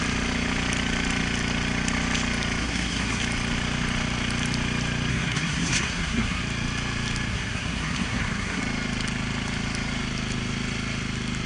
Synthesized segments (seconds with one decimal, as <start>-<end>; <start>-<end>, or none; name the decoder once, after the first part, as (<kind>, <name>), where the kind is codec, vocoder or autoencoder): 2.6-3.2 (codec, SNAC); 5.1-6.4; 7.3-8.6